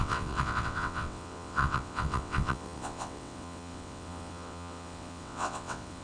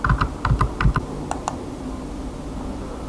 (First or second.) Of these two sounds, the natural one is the second